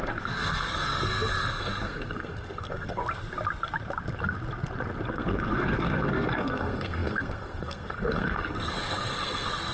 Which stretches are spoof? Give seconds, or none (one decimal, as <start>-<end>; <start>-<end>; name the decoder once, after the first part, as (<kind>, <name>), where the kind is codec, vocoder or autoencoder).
0.0-3.0 (codec, SNAC); 5.1-9.7